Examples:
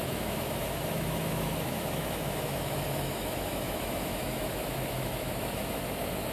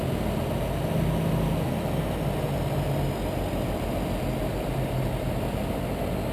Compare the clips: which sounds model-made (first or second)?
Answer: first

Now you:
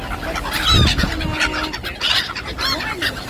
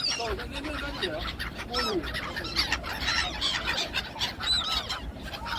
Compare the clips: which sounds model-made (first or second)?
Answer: second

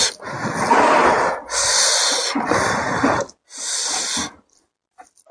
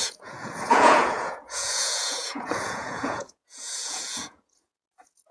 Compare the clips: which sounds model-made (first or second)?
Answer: second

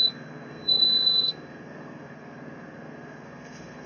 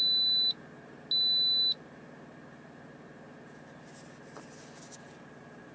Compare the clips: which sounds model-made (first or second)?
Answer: first